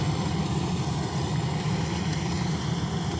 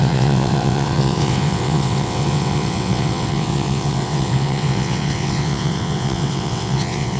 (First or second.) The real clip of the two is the first